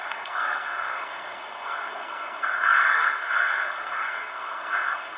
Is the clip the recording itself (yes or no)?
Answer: no